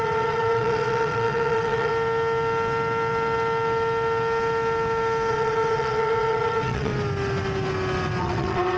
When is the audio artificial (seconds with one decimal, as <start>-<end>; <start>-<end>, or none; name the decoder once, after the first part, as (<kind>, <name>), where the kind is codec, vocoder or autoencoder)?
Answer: 0.0-1.9 (vocoder, WaveNeXt); 5.3-6.9; 8.2-8.8